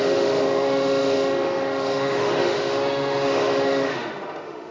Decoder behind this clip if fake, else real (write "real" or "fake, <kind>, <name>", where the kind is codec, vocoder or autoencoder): fake, autoencoder, DAC-VAE